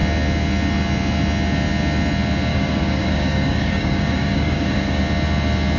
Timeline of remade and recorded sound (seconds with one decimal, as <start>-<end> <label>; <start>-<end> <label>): 0.0-2.5 recorded; 2.5-5.0 remade; 5.0-5.8 recorded